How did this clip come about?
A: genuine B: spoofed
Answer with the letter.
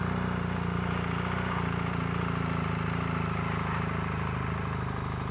A